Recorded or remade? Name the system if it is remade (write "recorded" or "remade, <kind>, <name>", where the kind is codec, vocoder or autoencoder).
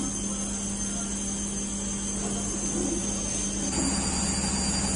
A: recorded